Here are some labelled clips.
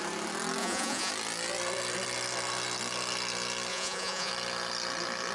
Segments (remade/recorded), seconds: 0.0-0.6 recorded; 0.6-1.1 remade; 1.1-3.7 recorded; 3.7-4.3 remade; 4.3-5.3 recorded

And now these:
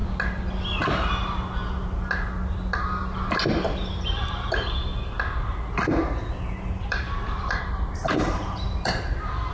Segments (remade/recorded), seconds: 0.0-4.0 recorded; 4.0-4.9 remade; 4.9-6.1 recorded; 6.1-9.5 remade

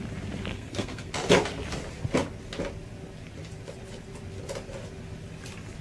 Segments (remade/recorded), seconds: 0.0-0.5 recorded; 0.5-1.1 remade; 1.1-5.8 recorded

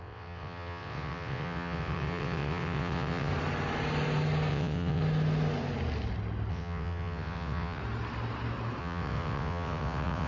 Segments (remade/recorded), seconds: 0.0-3.3 remade; 3.3-4.5 recorded; 4.5-5.0 remade; 5.0-6.5 recorded; 6.5-7.8 remade; 7.8-8.8 recorded; 8.8-10.3 remade

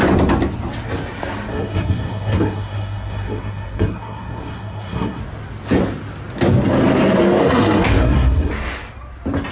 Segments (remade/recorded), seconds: 0.0-1.5 recorded; 1.5-5.2 remade; 5.2-7.4 recorded; 7.4-8.5 remade; 8.5-9.5 recorded